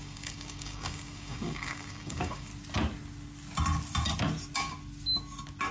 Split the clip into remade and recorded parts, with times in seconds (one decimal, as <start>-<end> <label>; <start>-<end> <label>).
0.0-2.5 remade; 2.5-5.7 recorded